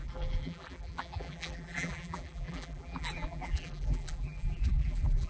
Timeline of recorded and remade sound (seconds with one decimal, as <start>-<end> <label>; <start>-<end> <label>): 0.0-5.3 remade